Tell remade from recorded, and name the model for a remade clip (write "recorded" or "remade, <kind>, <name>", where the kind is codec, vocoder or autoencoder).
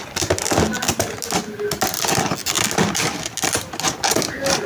recorded